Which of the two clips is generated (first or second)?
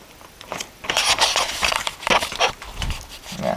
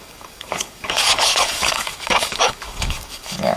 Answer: second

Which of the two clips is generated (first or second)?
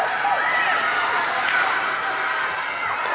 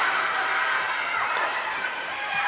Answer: second